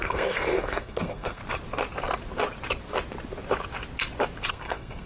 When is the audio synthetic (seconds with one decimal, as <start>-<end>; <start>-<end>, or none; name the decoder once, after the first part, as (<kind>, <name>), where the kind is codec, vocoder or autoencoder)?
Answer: 0.0-1.4 (codec, SNAC); 4.5-5.1